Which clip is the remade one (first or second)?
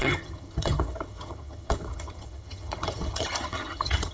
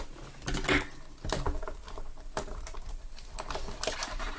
first